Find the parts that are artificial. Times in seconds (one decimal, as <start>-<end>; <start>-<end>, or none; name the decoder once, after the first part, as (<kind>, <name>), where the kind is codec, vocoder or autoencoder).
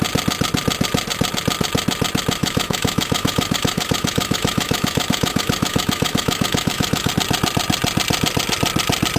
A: 2.4-7.1 (autoencoder, DAC-VAE)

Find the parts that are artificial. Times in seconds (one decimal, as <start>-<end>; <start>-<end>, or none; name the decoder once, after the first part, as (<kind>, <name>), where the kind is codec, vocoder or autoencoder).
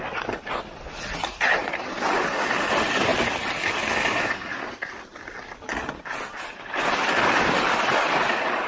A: none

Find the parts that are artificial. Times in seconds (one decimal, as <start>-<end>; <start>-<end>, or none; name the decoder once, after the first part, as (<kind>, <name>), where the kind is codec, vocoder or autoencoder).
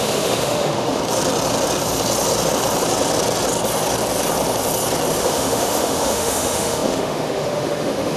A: 0.0-1.0 (autoencoder, DAC-VAE); 5.2-8.2